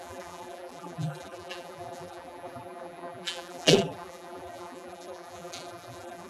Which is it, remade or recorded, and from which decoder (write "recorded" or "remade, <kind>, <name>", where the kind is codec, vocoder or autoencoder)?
remade, vocoder, BigVGAN v2